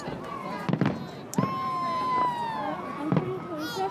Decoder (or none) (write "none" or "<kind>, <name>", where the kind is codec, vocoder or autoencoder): none